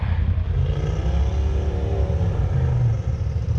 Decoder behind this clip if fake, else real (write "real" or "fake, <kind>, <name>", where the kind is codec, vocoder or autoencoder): real